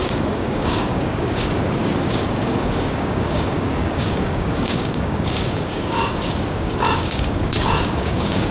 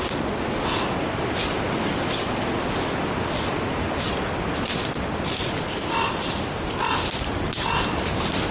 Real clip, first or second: second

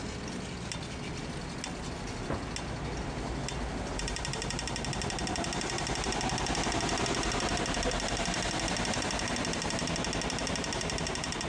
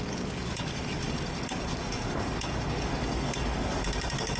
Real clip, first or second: first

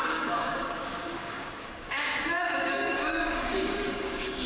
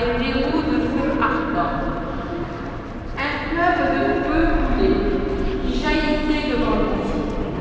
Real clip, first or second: second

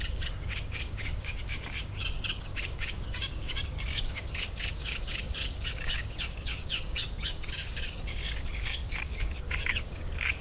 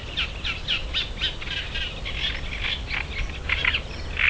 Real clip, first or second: second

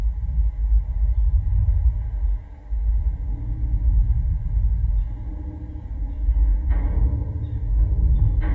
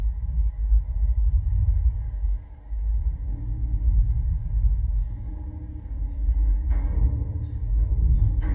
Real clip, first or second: first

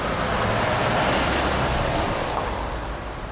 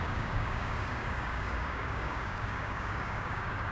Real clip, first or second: first